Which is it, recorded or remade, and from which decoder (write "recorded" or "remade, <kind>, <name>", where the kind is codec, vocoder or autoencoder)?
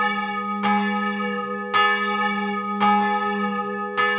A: recorded